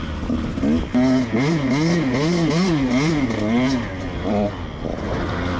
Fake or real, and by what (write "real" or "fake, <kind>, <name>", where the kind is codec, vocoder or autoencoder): real